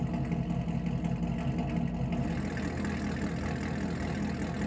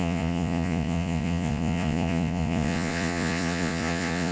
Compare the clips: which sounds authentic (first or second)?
first